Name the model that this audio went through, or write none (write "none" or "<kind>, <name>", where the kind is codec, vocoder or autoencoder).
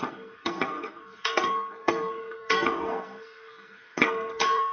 codec, SNAC